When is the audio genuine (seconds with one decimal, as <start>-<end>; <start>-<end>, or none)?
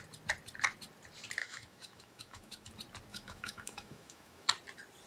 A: 0.0-1.4; 2.7-3.1; 4.5-5.1